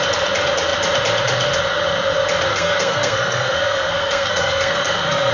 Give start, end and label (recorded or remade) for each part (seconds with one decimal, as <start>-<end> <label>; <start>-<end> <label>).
0.0-2.5 recorded; 2.5-5.3 remade